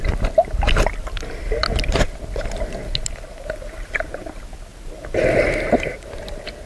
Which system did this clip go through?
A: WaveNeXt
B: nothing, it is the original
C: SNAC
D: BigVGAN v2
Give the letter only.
B